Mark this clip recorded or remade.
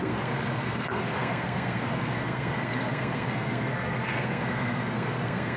remade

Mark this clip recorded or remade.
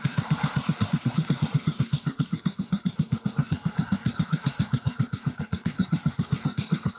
remade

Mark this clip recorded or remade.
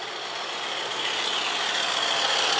recorded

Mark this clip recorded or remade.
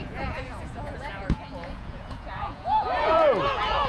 remade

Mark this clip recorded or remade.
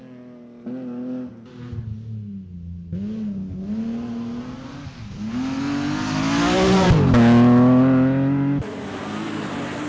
recorded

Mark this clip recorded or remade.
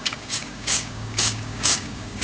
remade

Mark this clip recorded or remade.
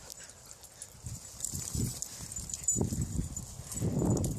recorded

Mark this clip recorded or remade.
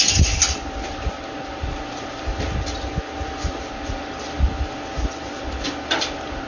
recorded